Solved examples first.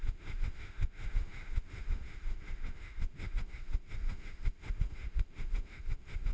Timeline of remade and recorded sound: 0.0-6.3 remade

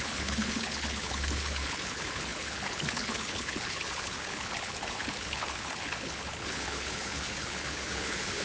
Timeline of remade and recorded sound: 0.0-8.4 remade